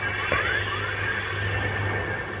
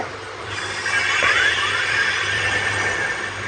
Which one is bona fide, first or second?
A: first